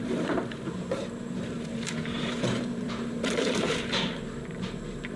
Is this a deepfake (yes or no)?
yes